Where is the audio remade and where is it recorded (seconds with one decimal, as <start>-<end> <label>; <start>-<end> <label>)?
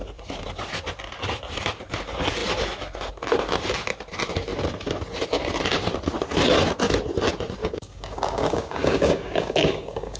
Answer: 0.0-7.6 recorded; 7.6-10.2 remade